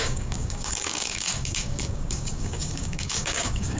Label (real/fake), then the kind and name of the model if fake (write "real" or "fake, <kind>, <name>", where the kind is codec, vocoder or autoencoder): fake, codec, DAC